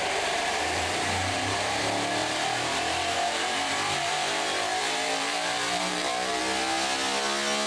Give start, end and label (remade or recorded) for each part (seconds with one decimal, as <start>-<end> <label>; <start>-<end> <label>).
0.0-0.5 recorded; 0.5-1.8 remade; 1.8-2.2 recorded; 2.2-6.4 remade; 6.4-7.7 recorded